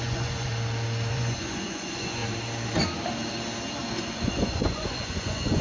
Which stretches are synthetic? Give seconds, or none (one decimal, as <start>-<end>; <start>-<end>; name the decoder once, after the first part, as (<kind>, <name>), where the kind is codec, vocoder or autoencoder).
0.0-0.5 (vocoder, Vocos); 1.1-2.2; 3.9-5.6